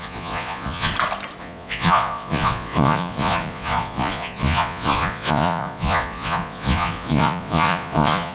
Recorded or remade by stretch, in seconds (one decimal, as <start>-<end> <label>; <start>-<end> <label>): 0.0-0.9 remade; 0.9-1.4 recorded; 1.4-8.3 remade